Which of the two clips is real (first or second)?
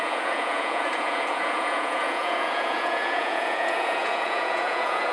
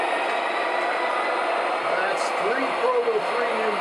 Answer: second